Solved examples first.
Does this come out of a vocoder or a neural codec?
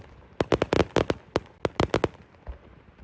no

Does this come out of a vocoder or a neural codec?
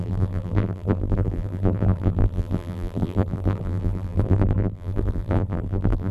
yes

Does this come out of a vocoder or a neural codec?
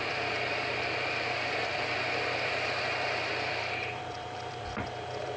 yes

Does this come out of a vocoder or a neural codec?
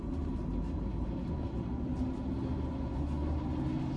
no